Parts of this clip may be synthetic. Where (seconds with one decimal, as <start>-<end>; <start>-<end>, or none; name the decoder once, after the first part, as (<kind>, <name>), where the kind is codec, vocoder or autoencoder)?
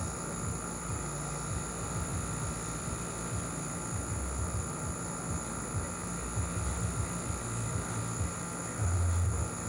none